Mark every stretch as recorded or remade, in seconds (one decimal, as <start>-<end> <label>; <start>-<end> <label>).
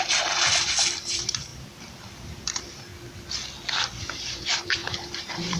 0.0-2.9 remade; 2.9-4.0 recorded; 4.0-5.6 remade